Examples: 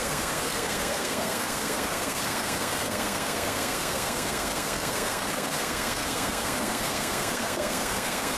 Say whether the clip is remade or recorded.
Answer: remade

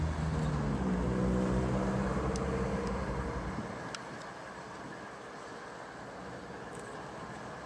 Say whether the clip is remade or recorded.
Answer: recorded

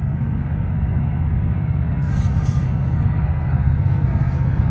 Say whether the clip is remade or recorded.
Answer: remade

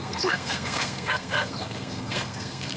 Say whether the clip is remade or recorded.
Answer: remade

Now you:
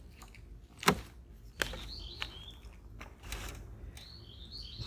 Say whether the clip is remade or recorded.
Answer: recorded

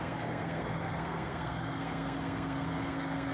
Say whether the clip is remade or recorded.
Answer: remade